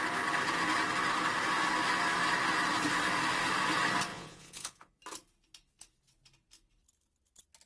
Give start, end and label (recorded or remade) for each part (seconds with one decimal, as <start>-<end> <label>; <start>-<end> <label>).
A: 0.0-4.1 recorded; 4.1-4.9 remade; 4.9-7.7 recorded